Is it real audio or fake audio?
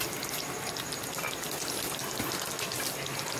real